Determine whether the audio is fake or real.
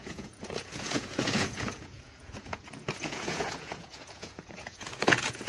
fake